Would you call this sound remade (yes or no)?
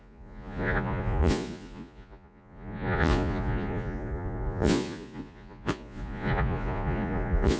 yes